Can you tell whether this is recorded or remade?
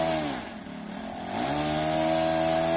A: recorded